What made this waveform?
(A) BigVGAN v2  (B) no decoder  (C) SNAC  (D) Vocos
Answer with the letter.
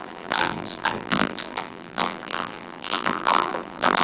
A